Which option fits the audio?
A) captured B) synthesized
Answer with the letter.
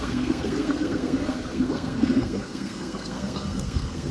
B